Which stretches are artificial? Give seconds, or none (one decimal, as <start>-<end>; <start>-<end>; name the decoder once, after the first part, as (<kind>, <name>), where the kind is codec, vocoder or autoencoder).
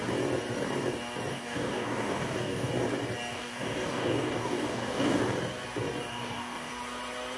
1.3-2.7 (codec, DAC); 3.3-5.2; 6.1-6.7